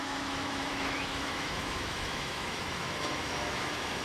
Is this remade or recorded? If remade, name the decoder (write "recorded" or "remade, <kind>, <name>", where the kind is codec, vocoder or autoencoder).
remade, autoencoder, DAC-VAE